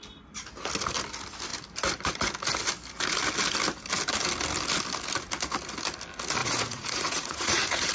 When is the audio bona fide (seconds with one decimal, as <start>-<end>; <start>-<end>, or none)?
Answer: 0.0-6.4